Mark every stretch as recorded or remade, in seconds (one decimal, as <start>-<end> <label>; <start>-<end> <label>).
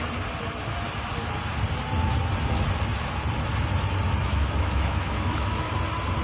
0.0-4.2 recorded; 4.2-5.7 remade; 5.7-6.2 recorded